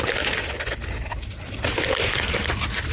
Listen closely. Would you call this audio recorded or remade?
recorded